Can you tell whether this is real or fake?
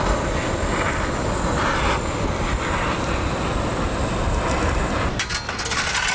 real